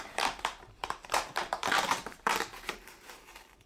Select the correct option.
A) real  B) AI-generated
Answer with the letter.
B